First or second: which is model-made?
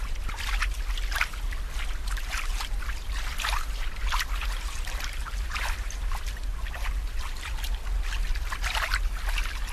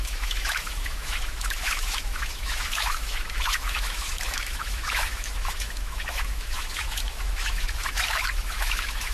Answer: second